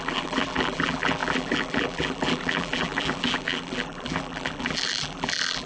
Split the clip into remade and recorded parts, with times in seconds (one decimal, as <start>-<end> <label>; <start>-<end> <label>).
0.0-5.7 remade